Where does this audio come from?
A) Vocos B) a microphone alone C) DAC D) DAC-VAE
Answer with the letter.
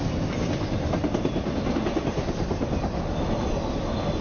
B